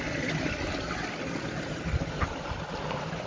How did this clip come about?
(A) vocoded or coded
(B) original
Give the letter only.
B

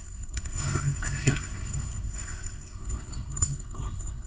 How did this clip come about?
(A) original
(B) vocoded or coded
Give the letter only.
B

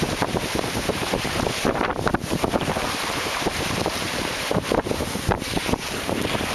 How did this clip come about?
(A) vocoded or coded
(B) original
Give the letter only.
A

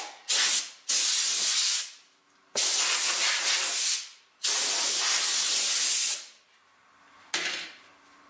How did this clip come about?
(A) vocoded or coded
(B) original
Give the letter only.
B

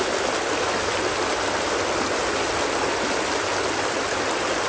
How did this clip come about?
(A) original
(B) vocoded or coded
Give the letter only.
A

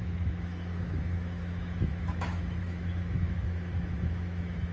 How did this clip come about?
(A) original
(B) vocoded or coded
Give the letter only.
B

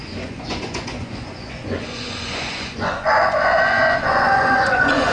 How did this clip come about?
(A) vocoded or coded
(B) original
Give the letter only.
A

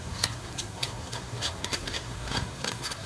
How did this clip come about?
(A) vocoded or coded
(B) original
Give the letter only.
A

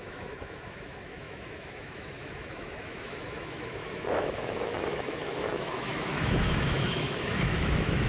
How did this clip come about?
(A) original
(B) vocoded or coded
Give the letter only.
B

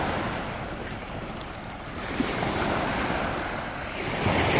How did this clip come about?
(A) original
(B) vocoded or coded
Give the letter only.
A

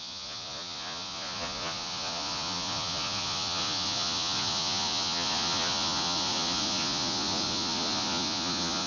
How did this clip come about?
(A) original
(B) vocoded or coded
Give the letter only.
B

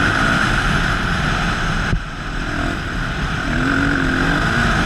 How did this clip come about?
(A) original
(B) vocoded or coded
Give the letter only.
A